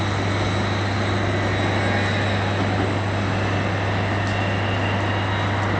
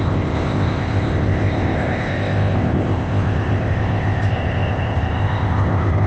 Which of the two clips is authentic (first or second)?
first